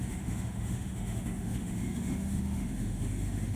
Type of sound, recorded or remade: remade